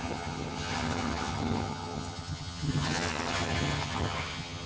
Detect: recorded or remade remade